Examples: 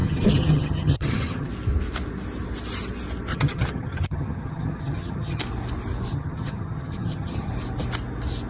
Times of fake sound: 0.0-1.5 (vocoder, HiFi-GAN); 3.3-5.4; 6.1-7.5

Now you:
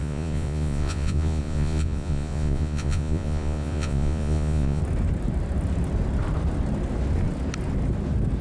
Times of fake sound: 0.0-4.8 (vocoder, Vocos)

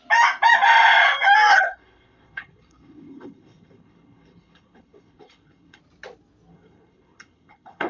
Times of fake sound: 1.5-5.8 (codec, HILCodec); 6.5-7.9

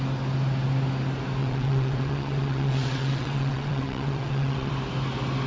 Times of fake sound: 1.4-4.7 (vocoder, WaveNeXt)

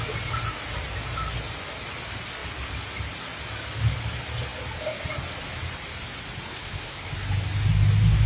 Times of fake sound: 6.5-7.1 (codec, HILCodec)